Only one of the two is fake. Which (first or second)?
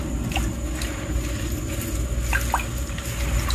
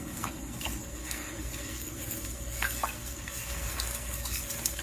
second